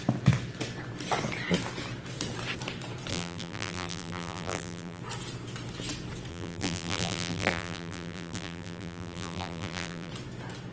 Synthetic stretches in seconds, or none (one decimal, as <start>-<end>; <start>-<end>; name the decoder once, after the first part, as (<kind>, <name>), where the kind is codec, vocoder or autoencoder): 3.1-5.0 (vocoder, BigVGAN v2); 6.3-10.1